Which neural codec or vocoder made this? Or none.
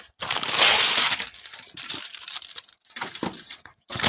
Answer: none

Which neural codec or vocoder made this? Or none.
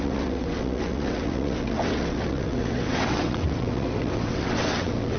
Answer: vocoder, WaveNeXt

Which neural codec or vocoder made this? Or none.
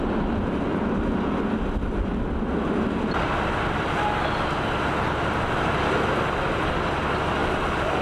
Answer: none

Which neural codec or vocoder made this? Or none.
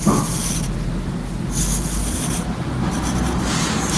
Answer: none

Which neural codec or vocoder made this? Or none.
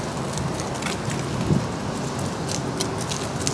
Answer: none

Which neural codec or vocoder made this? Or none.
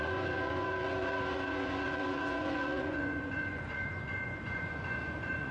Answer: vocoder, Vocos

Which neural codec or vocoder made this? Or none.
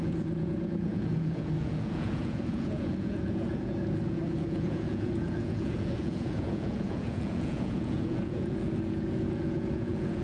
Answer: vocoder, Vocos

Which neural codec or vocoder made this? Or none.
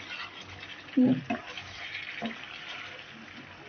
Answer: none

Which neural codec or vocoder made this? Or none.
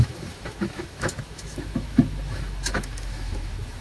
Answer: autoencoder, DAC-VAE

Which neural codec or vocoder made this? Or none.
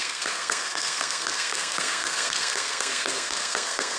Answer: codec, SNAC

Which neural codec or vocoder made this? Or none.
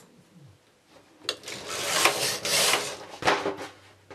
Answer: none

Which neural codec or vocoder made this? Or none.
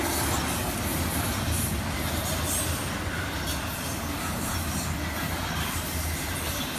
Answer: none